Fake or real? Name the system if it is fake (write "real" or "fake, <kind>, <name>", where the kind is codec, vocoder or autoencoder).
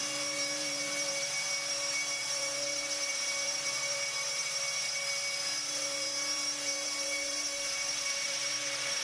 fake, vocoder, BigVGAN v2